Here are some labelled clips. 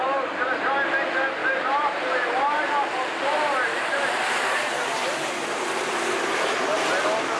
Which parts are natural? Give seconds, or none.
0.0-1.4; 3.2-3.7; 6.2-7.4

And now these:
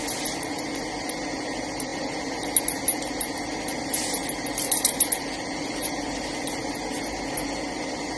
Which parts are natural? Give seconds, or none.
0.0-8.2

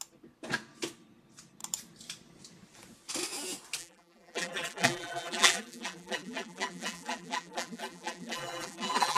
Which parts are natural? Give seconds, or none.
0.0-3.8

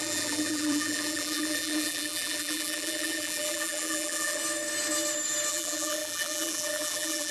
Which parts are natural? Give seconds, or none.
4.4-5.5

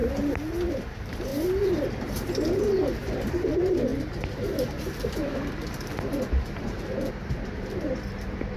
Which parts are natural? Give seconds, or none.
0.0-0.7

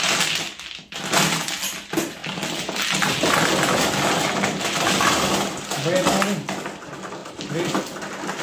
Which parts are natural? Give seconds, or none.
0.0-8.4

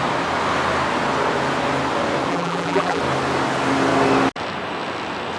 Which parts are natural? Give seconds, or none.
0.0-2.3; 3.0-5.4